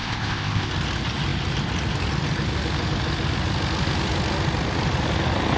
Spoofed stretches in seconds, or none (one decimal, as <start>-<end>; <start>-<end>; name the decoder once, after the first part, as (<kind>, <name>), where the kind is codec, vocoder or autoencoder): 0.0-0.7 (codec, ZipCodec)